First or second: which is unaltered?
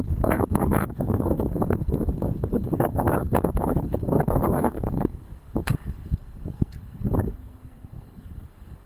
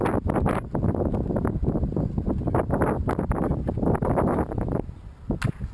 second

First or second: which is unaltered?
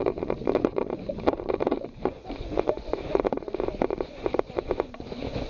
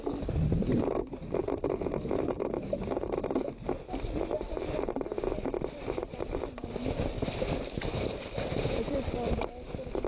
second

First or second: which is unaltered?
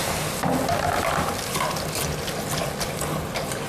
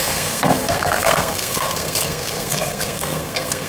first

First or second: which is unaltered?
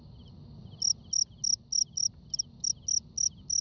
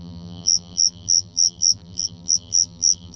first